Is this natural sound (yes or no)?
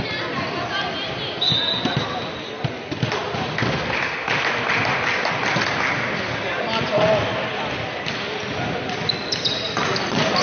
yes